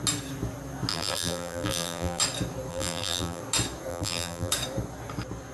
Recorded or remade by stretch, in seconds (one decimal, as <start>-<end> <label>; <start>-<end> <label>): 0.0-0.9 recorded; 0.9-2.2 remade; 2.2-2.7 recorded; 2.7-3.4 remade; 3.4-3.9 recorded; 3.9-4.5 remade; 4.5-5.5 recorded